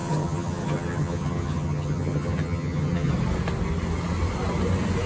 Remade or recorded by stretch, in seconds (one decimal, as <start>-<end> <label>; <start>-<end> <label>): 0.0-3.1 remade; 3.1-5.1 recorded